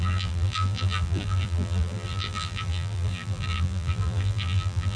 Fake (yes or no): yes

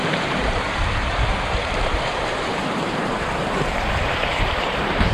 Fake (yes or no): yes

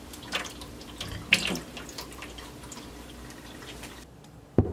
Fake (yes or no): yes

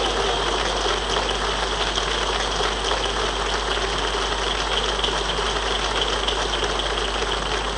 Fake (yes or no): no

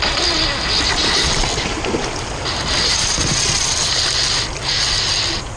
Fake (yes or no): no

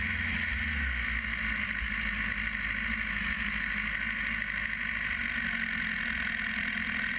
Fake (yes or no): no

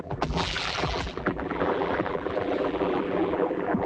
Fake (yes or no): yes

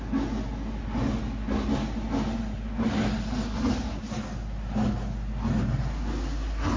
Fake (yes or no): no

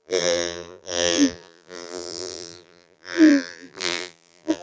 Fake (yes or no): yes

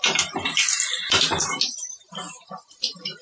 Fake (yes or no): yes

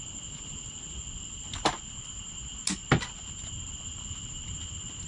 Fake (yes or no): no